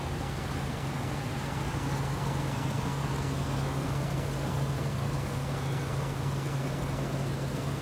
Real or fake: fake